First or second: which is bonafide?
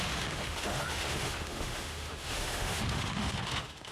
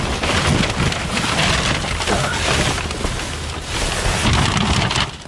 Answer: second